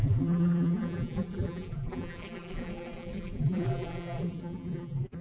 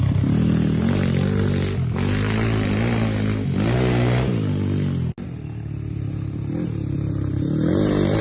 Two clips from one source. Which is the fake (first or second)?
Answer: first